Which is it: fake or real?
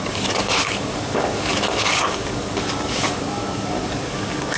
fake